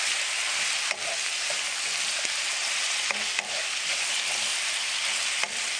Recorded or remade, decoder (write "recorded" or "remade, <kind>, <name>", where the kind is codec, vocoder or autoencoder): recorded